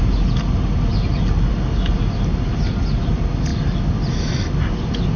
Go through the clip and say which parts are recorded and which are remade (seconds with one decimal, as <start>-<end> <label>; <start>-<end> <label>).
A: 0.0-5.2 recorded